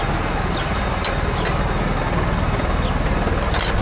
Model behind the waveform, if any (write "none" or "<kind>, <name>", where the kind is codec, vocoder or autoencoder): none